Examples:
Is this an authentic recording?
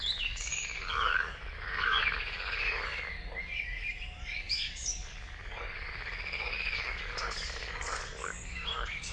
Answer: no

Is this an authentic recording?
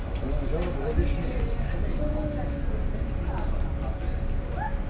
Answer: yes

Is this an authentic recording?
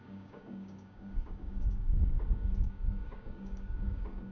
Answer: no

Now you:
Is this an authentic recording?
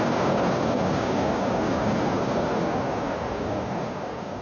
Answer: no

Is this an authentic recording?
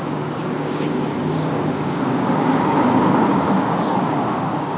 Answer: no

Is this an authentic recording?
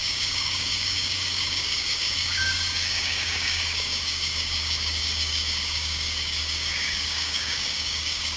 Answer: no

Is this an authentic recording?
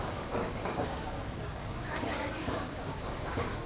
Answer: no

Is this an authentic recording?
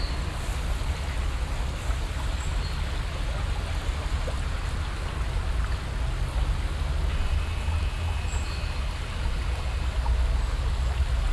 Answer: yes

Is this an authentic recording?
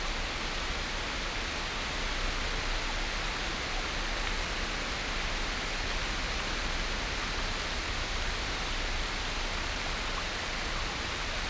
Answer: yes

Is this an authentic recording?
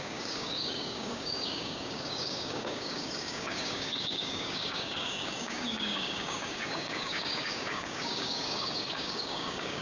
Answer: no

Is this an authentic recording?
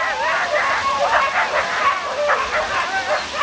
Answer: yes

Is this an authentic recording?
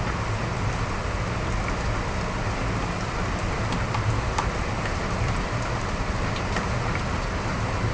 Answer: yes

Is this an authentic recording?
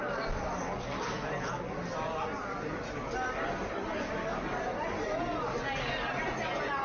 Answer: yes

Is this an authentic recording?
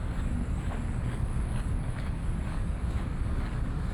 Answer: no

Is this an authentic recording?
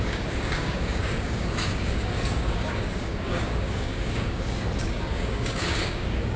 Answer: no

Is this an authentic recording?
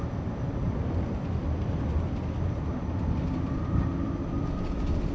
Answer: yes